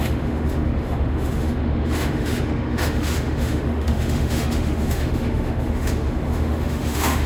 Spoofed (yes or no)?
yes